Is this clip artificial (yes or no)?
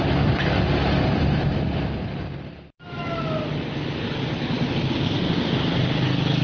no